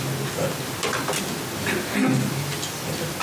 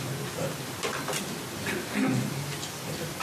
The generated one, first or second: second